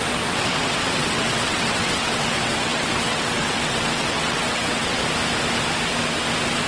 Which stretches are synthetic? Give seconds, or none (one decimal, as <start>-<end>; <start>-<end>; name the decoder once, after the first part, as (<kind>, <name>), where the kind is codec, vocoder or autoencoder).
0.0-5.0 (vocoder, WaveNeXt)